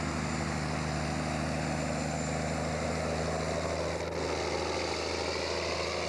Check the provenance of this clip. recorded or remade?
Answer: recorded